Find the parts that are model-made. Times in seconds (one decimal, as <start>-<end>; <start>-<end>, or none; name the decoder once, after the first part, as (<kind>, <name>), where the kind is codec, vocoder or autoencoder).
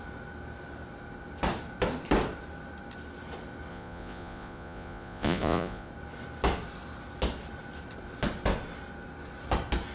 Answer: 3.7-5.9 (vocoder, Vocos)